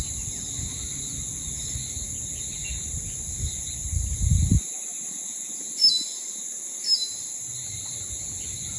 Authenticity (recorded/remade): recorded